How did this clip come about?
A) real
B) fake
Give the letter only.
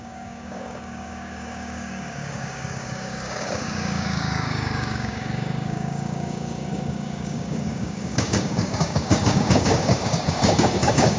B